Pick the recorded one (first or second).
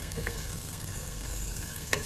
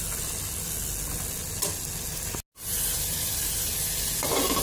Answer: second